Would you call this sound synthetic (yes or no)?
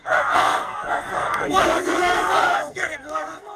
yes